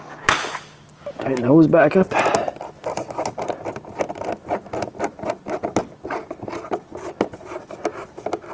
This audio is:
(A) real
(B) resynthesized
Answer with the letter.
A